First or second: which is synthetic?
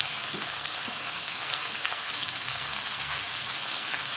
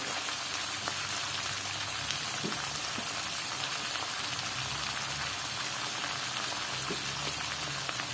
first